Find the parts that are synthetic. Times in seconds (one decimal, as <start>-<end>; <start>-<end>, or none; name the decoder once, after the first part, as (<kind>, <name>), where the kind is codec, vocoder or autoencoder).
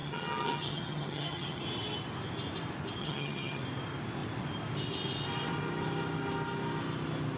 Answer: 0.0-1.6 (vocoder, HiFi-GAN); 3.0-3.6